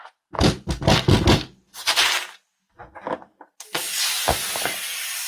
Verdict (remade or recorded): recorded